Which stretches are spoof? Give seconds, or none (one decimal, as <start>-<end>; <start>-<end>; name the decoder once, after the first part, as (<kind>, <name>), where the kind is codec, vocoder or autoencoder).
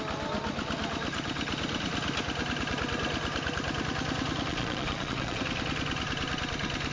4.5-5.4 (vocoder, Vocos)